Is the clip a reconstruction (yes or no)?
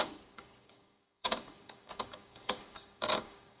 yes